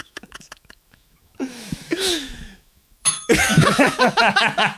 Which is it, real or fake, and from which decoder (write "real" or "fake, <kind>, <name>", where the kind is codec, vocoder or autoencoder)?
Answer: fake, autoencoder, DAC-VAE